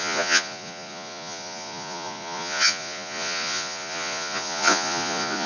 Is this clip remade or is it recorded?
remade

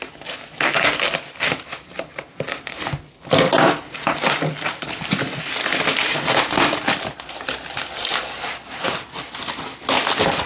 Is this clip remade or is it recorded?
recorded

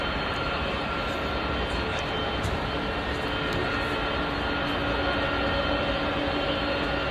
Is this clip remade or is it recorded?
recorded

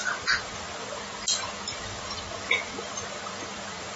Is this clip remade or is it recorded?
recorded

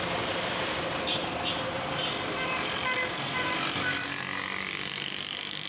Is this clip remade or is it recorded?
recorded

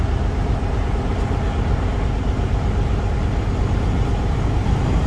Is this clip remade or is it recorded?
recorded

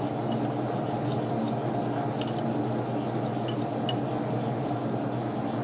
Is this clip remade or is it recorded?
recorded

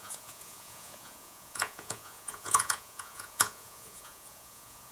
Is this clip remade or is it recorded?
remade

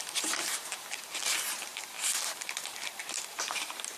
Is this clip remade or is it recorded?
remade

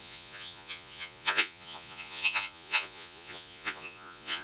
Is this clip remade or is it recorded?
remade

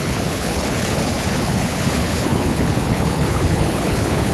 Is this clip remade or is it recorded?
remade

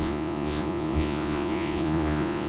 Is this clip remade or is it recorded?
remade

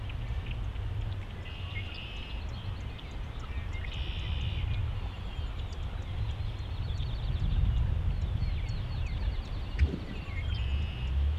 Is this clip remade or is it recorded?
recorded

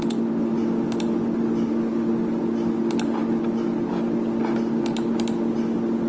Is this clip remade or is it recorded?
recorded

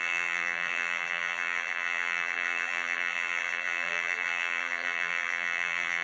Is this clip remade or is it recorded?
remade